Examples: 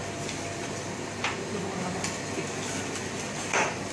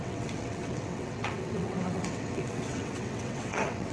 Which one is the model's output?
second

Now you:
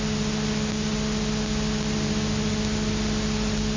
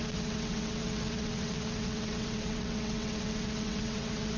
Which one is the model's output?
second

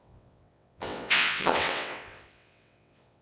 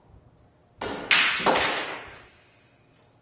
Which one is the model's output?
first